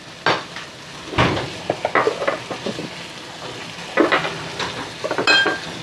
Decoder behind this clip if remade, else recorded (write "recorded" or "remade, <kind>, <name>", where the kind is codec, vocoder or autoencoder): recorded